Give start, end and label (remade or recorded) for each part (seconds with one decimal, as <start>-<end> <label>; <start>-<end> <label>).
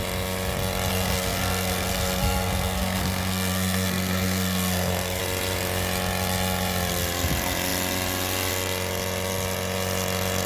0.0-0.9 recorded; 0.9-5.2 remade; 5.2-10.5 recorded